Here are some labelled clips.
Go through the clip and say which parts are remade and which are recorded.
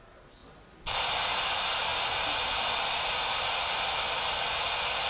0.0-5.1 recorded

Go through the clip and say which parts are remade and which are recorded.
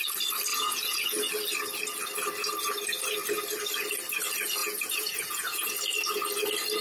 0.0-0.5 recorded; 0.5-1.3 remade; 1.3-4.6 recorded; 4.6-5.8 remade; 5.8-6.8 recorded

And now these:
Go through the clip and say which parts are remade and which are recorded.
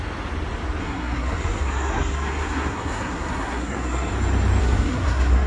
0.0-0.8 recorded; 0.8-4.1 remade; 4.1-4.6 recorded; 4.6-5.5 remade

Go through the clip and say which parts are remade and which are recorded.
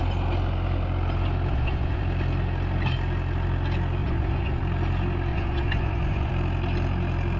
0.0-1.5 recorded; 1.5-2.0 remade; 2.0-4.0 recorded; 4.0-4.6 remade; 4.6-5.3 recorded; 5.3-6.3 remade; 6.3-7.4 recorded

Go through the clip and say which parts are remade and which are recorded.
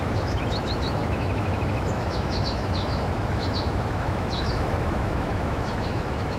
0.0-6.4 remade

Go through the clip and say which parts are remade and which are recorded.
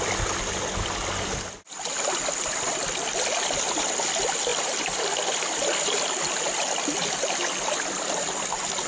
0.0-8.9 recorded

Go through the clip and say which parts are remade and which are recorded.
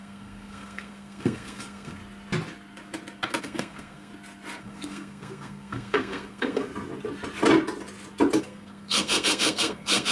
0.0-2.0 remade; 2.0-3.4 recorded; 3.4-4.1 remade; 4.1-4.6 recorded; 4.6-6.7 remade; 6.7-8.4 recorded; 8.4-10.1 remade